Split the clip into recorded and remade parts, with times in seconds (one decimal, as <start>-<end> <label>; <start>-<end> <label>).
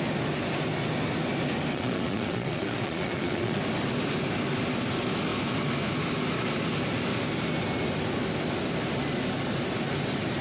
0.0-1.7 recorded; 1.7-3.6 remade; 3.6-10.4 recorded